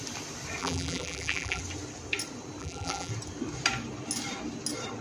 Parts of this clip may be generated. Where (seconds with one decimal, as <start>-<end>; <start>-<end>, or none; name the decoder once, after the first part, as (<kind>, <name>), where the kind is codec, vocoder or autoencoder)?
0.6-1.6 (vocoder, BigVGAN v2); 2.6-3.1